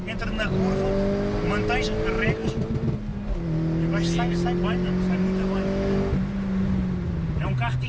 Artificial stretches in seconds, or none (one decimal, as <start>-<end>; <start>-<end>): none